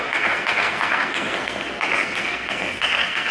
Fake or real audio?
fake